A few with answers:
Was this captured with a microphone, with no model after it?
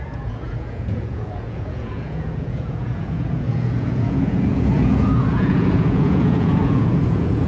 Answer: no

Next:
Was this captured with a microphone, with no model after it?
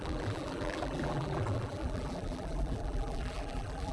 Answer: no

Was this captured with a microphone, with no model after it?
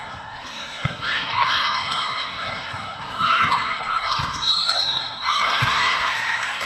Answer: no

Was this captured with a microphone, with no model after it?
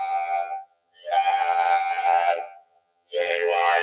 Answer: no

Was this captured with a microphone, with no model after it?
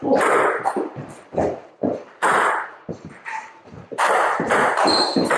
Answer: no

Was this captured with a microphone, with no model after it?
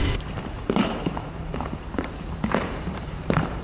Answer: no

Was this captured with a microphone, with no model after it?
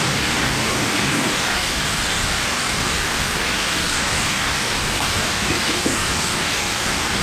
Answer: no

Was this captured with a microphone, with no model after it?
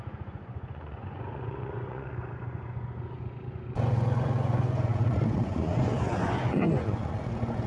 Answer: no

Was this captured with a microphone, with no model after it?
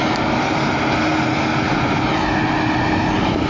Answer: yes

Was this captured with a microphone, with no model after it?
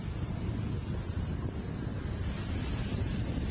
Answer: yes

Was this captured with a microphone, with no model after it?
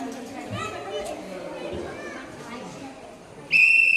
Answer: yes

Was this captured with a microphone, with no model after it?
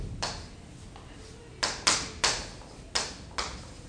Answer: yes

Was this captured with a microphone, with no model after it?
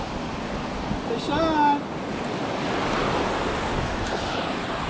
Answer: yes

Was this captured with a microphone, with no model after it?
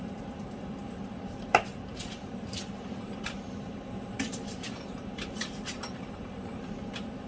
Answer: no